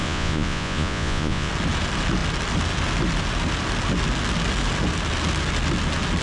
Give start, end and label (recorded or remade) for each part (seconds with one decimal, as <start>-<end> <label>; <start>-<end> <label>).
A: 0.0-1.5 remade; 1.5-6.2 recorded